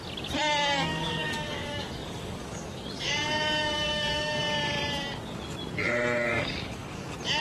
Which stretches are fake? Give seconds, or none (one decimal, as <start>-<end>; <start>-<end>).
0.9-4.4; 6.3-7.0